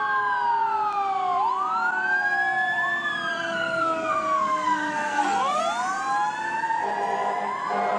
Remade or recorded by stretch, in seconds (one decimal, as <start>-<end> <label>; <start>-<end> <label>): 0.0-3.3 recorded; 3.3-5.6 remade; 5.6-8.0 recorded